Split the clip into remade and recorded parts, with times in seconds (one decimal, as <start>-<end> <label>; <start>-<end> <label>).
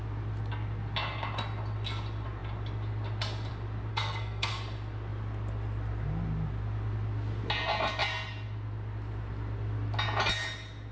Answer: 0.0-3.9 recorded; 3.9-4.5 remade; 4.5-10.9 recorded